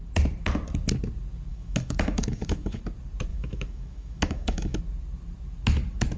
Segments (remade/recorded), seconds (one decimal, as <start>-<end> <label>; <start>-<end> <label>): 0.0-1.5 recorded; 1.5-2.8 remade; 2.8-3.3 recorded; 3.3-4.8 remade; 4.8-6.2 recorded